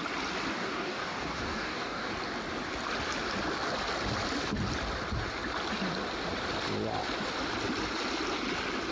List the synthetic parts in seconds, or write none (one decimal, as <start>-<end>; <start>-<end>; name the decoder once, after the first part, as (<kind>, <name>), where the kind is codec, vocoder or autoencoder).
0.5-2.1 (codec, DAC)